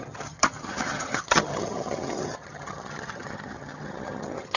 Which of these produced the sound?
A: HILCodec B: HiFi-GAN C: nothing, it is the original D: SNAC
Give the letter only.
B